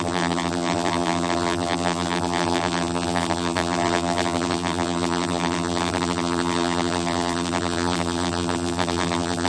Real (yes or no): no